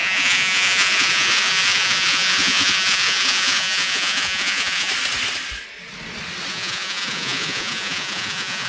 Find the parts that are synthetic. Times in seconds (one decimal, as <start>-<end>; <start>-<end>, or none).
0.0-4.9; 6.5-8.7